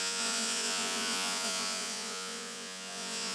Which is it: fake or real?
fake